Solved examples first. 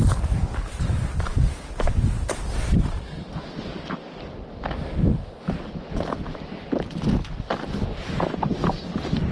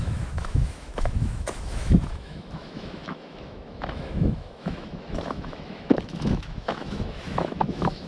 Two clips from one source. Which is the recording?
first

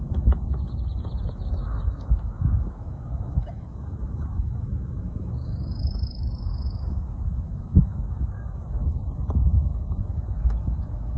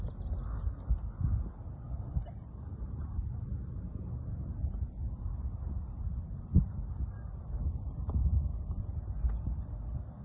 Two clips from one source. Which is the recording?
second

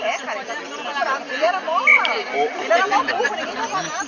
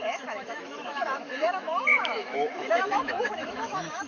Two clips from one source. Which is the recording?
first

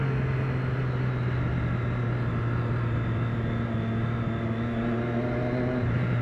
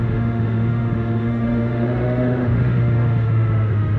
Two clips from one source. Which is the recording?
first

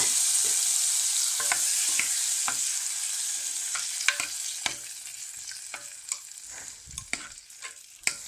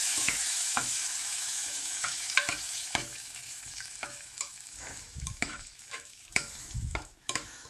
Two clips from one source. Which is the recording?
first